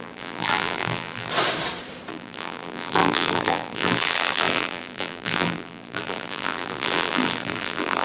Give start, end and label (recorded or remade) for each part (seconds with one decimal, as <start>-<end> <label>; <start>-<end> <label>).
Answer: 0.0-1.3 remade; 1.3-2.1 recorded; 2.1-8.0 remade